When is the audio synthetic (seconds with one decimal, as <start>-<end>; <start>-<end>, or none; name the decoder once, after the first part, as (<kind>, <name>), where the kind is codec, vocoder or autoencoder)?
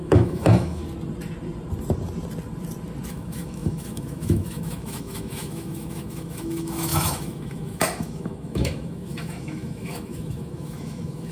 0.0-0.8 (autoencoder, DAC-VAE); 3.1-11.3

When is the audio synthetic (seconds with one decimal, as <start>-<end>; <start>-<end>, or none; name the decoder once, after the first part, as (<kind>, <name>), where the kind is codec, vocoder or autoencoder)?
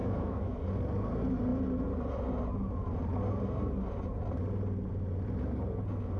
0.0-0.6 (autoencoder, DAC-VAE)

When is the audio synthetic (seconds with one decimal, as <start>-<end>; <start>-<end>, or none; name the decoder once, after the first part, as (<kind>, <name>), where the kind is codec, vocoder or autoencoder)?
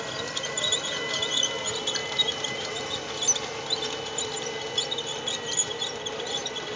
2.0-2.8 (vocoder, BigVGAN v2)